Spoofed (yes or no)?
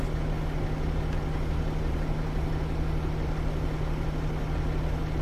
no